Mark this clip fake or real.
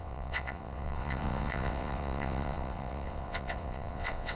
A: fake